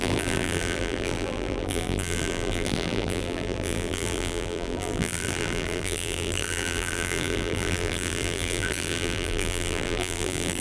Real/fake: fake